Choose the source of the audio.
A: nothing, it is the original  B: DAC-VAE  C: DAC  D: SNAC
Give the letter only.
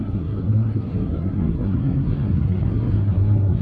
D